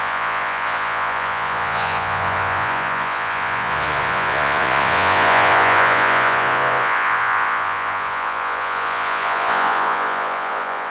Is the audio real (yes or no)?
no